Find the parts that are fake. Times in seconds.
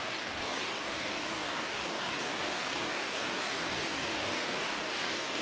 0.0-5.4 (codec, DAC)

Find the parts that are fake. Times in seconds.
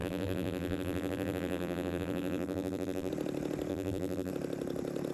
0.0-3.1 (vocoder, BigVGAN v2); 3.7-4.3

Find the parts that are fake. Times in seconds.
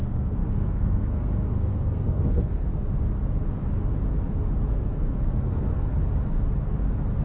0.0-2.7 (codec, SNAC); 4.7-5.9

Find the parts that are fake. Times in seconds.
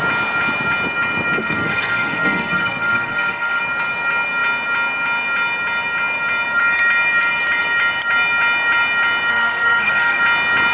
1.4-3.6 (codec, SNAC); 9.3-10.2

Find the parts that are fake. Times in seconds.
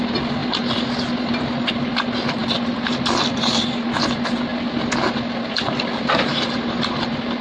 2.4-3.6 (vocoder, BigVGAN v2)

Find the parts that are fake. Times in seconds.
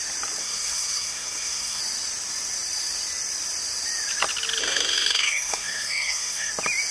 0.4-1.8 (codec, SNAC); 4.6-6.5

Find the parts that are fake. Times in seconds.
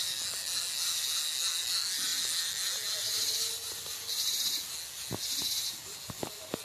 none